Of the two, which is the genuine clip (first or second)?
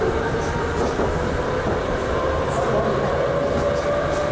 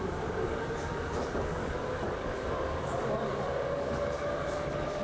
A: first